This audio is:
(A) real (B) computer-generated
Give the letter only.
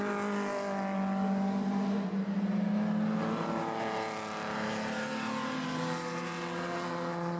A